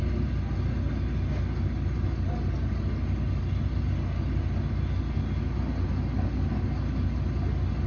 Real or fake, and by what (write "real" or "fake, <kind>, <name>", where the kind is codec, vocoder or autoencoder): real